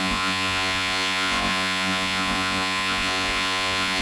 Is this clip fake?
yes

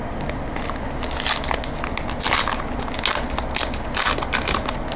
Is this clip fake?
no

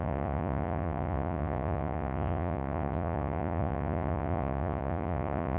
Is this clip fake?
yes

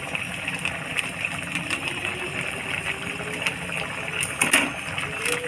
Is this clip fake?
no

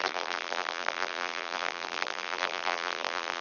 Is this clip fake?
yes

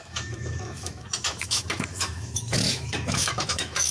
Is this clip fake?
yes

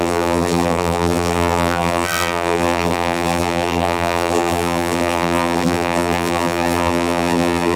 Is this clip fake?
yes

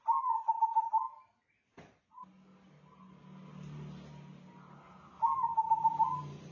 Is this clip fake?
no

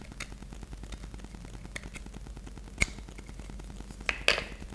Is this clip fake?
no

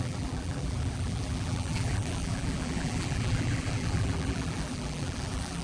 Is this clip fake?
yes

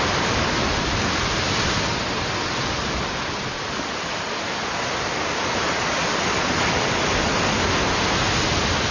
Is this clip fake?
no